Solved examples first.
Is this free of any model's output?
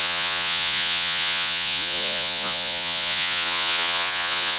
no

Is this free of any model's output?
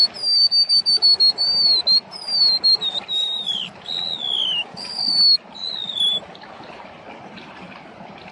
yes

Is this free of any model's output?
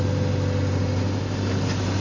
yes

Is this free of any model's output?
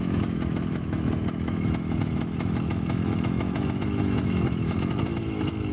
no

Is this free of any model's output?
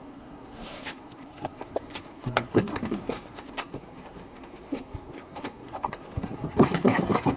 no